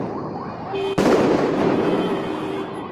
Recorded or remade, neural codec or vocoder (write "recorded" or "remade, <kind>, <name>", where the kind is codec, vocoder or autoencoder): recorded